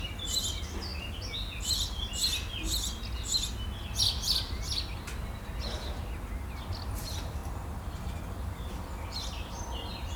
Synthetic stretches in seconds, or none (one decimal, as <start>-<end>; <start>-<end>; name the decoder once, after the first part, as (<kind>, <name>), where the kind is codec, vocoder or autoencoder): 0.0-0.9 (vocoder, BigVGAN v2); 4.0-4.7; 7.0-10.2